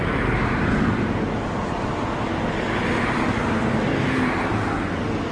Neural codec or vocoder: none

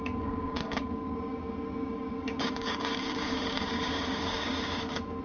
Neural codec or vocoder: codec, DAC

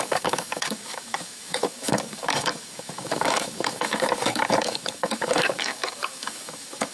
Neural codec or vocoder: codec, DAC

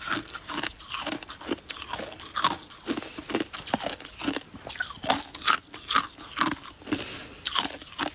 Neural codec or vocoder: none